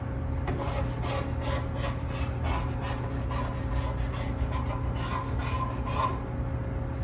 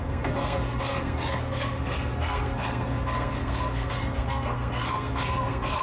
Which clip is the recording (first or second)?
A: first